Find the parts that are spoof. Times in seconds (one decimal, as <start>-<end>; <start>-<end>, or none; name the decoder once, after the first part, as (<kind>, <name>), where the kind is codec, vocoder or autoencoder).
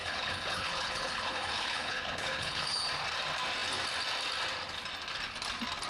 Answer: 0.0-2.9 (codec, HILCodec)